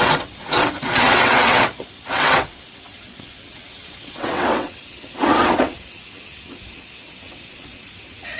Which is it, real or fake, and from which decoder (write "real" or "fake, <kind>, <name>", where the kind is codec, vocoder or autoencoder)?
fake, vocoder, WaveNeXt